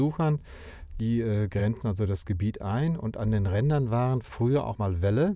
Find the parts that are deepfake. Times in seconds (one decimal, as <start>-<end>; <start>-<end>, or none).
0.4-1.0